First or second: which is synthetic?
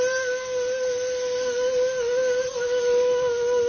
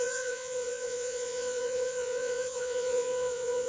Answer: second